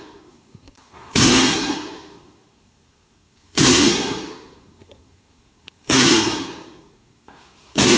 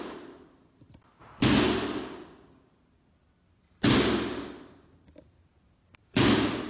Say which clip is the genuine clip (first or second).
second